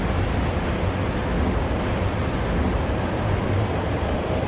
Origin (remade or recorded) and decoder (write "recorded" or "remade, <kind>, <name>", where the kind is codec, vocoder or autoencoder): recorded